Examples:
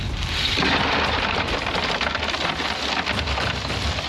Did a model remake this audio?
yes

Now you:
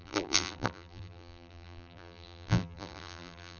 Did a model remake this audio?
yes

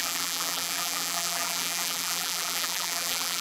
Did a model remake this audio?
yes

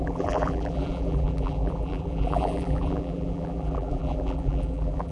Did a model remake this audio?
yes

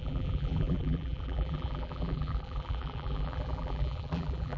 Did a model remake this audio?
yes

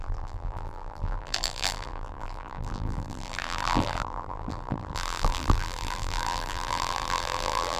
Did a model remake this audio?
yes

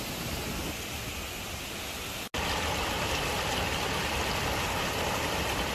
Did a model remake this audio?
no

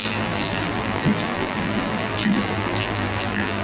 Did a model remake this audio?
yes